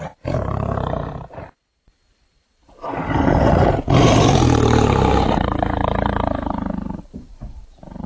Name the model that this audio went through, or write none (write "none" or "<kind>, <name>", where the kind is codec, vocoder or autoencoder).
vocoder, BigVGAN v2